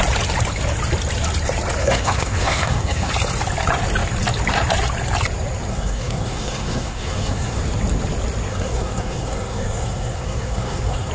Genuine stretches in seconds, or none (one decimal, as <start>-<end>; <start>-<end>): 0.0-1.8; 3.1-5.7; 7.6-8.5